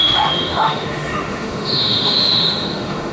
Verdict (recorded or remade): remade